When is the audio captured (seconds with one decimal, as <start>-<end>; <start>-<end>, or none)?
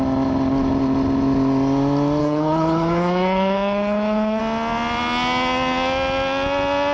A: 0.0-2.2; 4.4-6.9